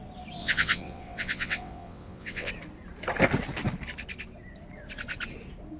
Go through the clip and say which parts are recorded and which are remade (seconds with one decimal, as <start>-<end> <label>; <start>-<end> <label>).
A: 0.0-0.4 recorded; 0.4-2.5 remade; 2.5-5.8 recorded